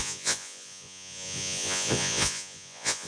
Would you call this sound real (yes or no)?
no